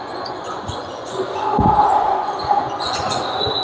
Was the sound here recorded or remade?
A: remade